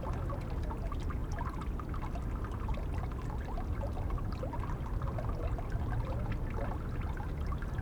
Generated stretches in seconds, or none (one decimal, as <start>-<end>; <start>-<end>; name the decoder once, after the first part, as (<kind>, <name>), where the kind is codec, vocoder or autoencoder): 3.7-6.2 (vocoder, BigVGAN v2)